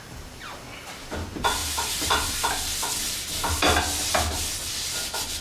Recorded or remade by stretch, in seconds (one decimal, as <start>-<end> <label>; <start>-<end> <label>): 0.0-1.6 recorded; 1.6-2.5 remade; 2.5-5.4 recorded